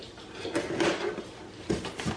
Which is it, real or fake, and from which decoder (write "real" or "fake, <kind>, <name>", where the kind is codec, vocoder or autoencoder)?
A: real